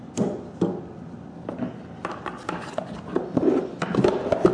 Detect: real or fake real